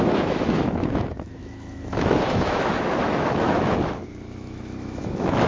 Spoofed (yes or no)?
yes